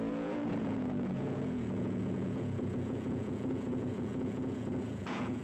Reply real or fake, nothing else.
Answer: fake